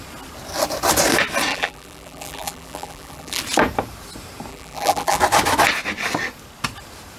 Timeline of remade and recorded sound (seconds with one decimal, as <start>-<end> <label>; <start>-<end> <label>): 0.0-1.5 recorded; 1.5-3.4 remade; 3.4-4.5 recorded; 4.5-5.2 remade; 5.2-7.2 recorded